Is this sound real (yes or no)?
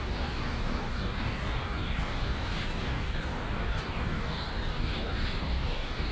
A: no